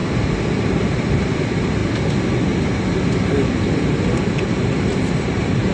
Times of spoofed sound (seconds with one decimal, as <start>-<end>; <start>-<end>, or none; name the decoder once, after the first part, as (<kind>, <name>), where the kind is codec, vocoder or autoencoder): 0.8-1.8 (vocoder, BigVGAN v2); 5.1-5.7